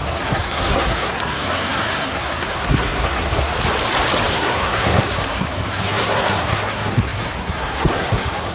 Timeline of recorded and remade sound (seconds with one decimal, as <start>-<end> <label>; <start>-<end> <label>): 0.0-3.5 remade; 3.5-4.3 recorded; 4.3-8.5 remade